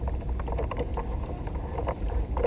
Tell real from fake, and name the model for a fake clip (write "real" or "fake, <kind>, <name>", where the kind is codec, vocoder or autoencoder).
fake, vocoder, BigVGAN v2